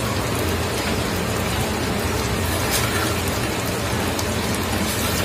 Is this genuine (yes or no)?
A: yes